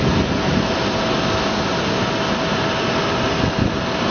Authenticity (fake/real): real